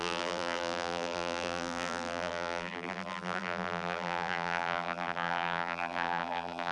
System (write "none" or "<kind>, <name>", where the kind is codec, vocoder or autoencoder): vocoder, BigVGAN v2